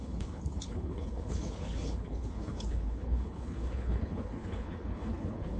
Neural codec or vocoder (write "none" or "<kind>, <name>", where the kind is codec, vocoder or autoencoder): codec, HILCodec